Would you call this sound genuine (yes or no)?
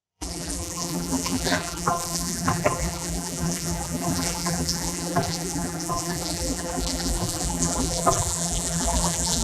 no